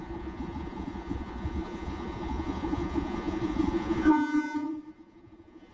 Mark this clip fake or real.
fake